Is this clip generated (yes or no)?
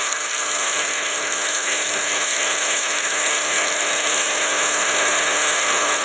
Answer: yes